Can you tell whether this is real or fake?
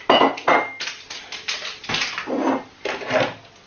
real